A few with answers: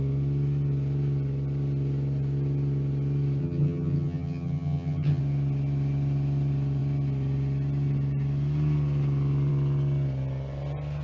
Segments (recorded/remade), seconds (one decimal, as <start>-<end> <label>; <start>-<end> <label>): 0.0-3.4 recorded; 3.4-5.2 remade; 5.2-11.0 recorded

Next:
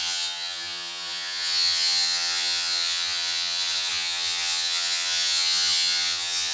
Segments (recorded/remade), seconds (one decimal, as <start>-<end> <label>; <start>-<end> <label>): 0.0-6.5 remade

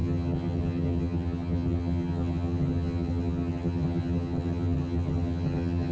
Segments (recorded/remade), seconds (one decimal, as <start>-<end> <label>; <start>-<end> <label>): 0.0-5.9 remade

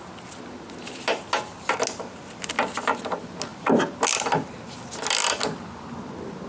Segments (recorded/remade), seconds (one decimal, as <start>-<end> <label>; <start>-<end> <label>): 0.0-6.5 recorded